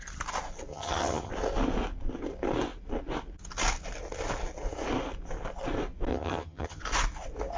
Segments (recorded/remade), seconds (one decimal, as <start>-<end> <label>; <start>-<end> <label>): 0.0-0.7 recorded; 0.7-1.3 remade; 1.3-6.1 recorded; 6.1-6.8 remade; 6.8-7.6 recorded